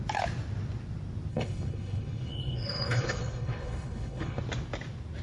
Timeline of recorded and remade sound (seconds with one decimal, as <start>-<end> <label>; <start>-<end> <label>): 0.0-1.3 recorded; 1.3-4.4 remade; 4.4-5.2 recorded